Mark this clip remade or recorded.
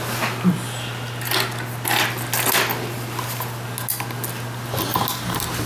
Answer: recorded